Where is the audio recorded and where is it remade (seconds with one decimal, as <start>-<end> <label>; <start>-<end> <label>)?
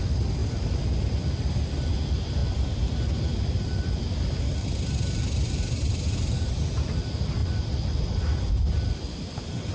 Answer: 0.0-0.4 recorded; 0.4-1.0 remade; 1.0-2.4 recorded; 2.4-6.5 remade; 6.5-7.4 recorded; 7.4-8.5 remade; 8.5-9.7 recorded